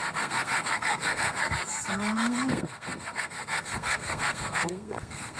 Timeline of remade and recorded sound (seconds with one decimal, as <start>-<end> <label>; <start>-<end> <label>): 0.0-5.4 remade